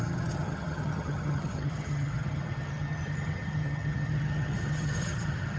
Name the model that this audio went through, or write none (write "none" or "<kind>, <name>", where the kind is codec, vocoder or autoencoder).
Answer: vocoder, HiFi-GAN